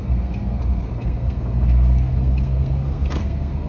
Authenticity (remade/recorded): remade